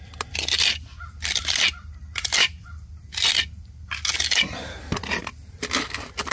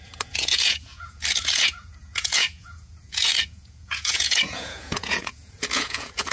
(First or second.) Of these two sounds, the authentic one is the first